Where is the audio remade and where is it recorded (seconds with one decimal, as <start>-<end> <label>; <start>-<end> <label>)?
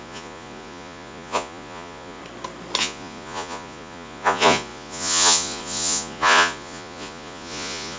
0.0-2.2 remade; 2.2-2.8 recorded; 2.8-8.0 remade